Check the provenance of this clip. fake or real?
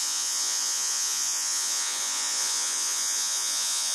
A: fake